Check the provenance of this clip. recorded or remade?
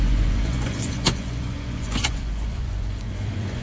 remade